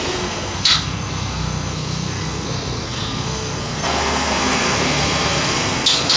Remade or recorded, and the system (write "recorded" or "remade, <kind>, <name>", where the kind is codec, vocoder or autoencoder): remade, codec, SNAC